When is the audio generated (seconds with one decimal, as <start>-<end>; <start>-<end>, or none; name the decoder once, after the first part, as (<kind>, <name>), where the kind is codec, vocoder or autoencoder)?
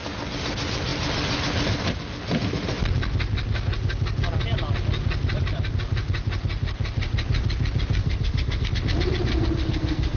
8.0-8.7 (codec, SNAC); 9.3-10.2